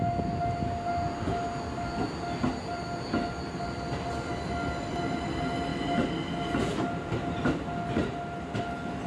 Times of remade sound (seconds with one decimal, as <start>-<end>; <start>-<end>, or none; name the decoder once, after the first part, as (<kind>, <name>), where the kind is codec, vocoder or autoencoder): none